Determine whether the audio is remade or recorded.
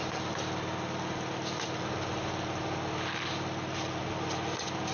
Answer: recorded